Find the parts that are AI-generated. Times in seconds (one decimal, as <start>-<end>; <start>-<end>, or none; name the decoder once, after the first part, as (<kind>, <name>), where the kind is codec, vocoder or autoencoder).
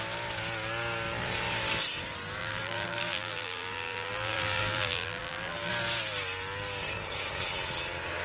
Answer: 2.4-5.7 (vocoder, BigVGAN v2)